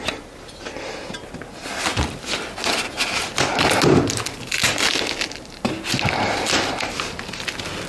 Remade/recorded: recorded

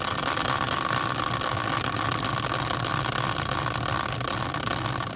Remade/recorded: recorded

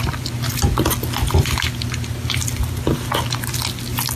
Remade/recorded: recorded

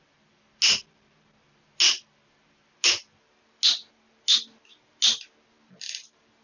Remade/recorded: recorded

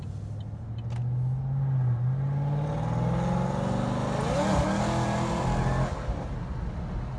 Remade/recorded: recorded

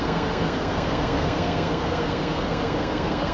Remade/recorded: remade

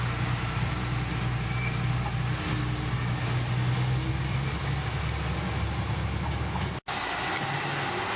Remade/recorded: recorded